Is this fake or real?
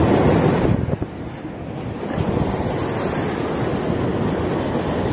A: real